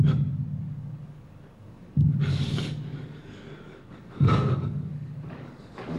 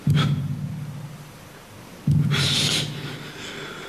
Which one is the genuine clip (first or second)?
second